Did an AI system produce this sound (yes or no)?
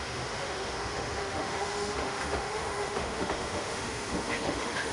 yes